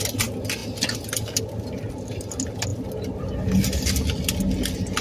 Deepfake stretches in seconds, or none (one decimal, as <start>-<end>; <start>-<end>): none